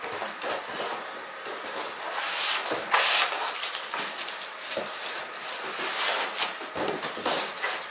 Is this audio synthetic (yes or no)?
no